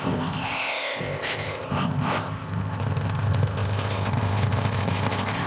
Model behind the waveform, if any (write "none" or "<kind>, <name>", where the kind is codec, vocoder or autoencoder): codec, ZipCodec